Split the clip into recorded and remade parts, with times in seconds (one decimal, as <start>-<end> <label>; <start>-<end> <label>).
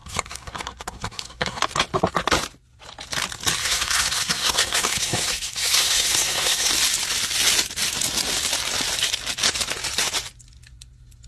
0.0-1.6 remade; 1.6-3.6 recorded; 3.6-6.7 remade; 6.7-11.3 recorded